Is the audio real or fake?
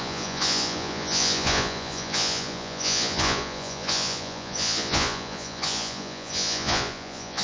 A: fake